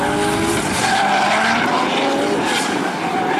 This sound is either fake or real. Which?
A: real